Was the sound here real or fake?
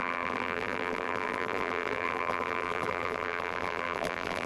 fake